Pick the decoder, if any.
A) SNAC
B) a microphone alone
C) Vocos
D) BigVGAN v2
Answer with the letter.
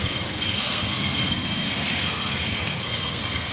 A